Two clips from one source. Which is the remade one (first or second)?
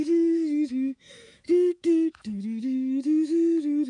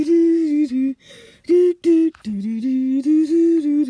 first